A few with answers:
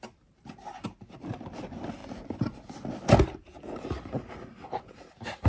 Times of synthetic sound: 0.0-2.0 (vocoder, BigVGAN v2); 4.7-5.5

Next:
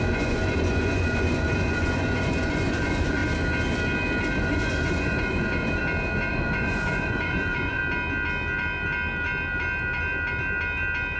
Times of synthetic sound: 0.0-3.2 (vocoder, Vocos); 4.4-5.8; 6.3-7.8

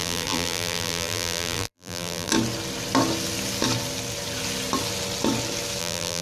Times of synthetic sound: 0.0-2.3 (vocoder, BigVGAN v2); 5.8-6.2

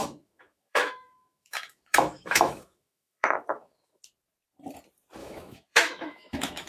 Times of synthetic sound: 0.0-4.0 (autoencoder, DAC-VAE); 5.2-6.7

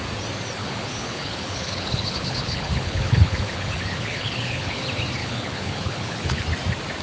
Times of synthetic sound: 0.6-4.8 (codec, HILCodec); 5.2-6.4

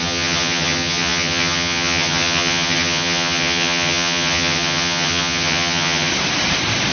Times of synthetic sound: 0.0-6.1 (vocoder, HiFi-GAN)